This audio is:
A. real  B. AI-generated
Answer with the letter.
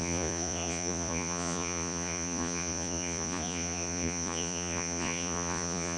B